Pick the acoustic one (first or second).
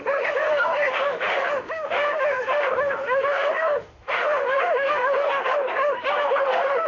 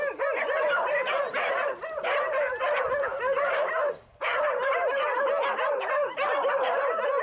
second